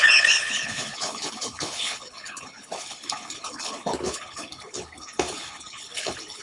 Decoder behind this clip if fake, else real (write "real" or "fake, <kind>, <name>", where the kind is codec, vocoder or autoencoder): fake, codec, HILCodec